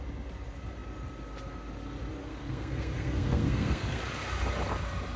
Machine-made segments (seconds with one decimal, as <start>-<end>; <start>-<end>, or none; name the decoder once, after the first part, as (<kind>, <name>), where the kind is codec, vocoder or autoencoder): 2.2-4.0 (codec, SNAC)